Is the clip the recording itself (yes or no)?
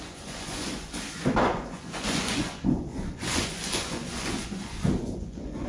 no